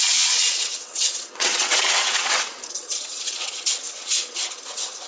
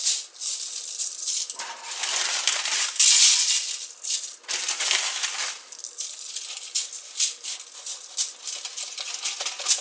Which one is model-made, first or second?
first